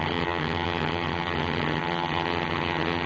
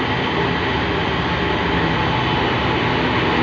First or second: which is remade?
first